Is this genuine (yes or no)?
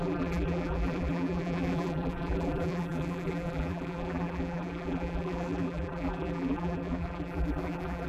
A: no